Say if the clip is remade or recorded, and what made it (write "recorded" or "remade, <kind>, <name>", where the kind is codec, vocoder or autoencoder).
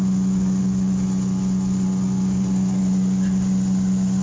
recorded